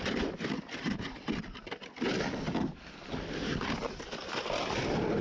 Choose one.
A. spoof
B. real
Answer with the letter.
B